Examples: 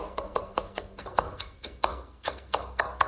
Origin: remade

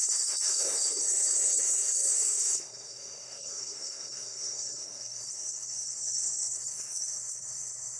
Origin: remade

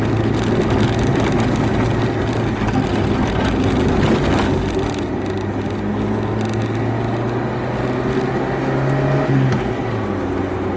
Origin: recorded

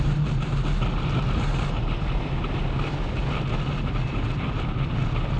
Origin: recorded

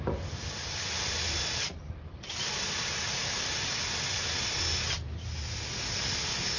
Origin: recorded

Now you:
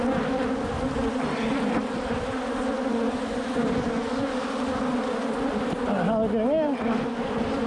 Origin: recorded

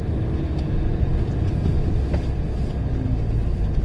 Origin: recorded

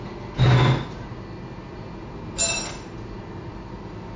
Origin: recorded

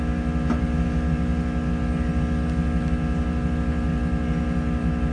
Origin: recorded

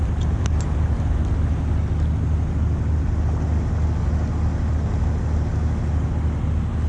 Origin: recorded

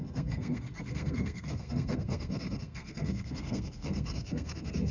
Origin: remade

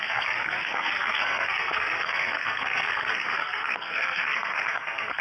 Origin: remade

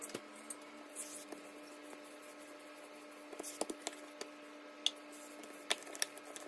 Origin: recorded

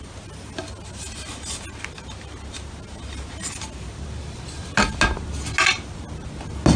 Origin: recorded